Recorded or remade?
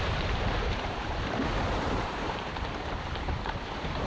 remade